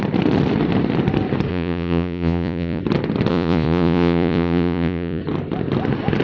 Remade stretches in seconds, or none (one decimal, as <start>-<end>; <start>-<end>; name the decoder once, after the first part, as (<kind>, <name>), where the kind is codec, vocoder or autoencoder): 1.5-2.8 (vocoder, Vocos); 3.3-5.2